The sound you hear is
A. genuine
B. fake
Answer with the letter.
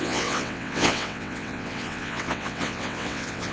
B